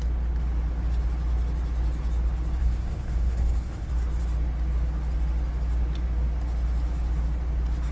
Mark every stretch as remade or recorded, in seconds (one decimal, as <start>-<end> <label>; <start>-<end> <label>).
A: 0.0-2.6 recorded; 2.6-3.9 remade; 3.9-7.9 recorded